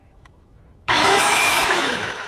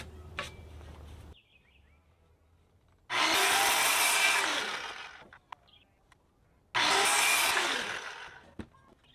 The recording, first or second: second